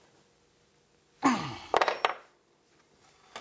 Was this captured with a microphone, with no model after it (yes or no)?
yes